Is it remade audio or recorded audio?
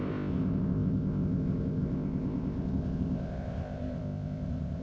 remade